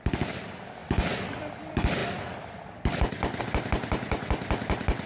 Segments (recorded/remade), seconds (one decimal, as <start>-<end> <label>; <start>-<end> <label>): 0.0-5.1 recorded